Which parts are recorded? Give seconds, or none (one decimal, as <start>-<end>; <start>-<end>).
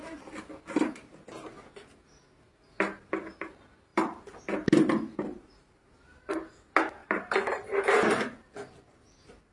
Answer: 0.0-3.9; 4.4-7.0; 8.1-9.5